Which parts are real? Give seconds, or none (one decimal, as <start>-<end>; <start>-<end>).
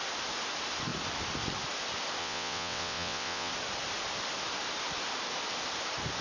0.0-2.2; 3.5-6.2